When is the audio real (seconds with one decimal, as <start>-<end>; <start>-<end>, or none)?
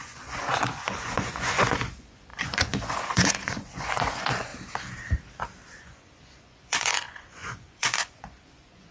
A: 4.5-5.8